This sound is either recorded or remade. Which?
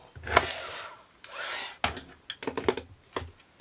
recorded